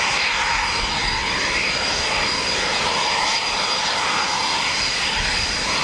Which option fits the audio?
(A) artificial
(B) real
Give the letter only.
B